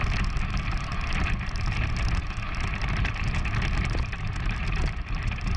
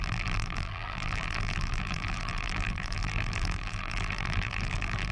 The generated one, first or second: second